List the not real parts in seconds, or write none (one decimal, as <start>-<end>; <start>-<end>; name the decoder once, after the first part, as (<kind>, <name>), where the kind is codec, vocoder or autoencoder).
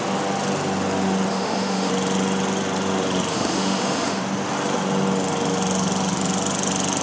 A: 1.3-1.9 (autoencoder, DAC-VAE); 3.3-4.2